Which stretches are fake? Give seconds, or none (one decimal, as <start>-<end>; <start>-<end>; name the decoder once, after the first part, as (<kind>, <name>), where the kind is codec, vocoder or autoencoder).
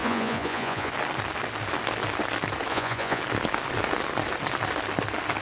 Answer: 0.0-0.9 (vocoder, Vocos); 2.7-3.2